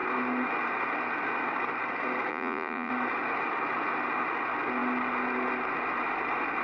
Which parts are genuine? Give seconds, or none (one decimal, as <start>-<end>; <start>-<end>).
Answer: 0.0-2.3; 2.9-6.6